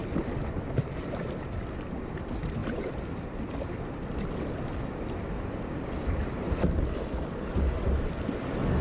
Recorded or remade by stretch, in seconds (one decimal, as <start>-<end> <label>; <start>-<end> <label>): 0.0-1.9 remade; 1.9-2.6 recorded; 2.6-6.5 remade; 6.5-8.8 recorded